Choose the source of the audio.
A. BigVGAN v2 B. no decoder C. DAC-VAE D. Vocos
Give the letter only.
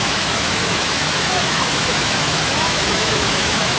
C